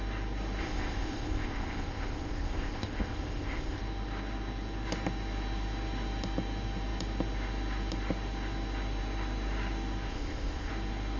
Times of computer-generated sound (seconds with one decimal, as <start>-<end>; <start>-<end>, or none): 0.6-3.8; 10.1-10.7